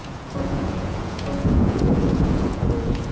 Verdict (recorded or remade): remade